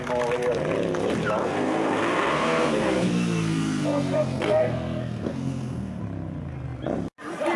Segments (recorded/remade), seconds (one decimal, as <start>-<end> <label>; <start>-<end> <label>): 0.0-1.4 recorded; 1.4-6.0 remade; 6.0-7.6 recorded